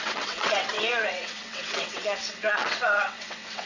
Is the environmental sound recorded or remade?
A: remade